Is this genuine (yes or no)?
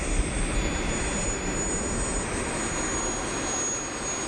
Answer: yes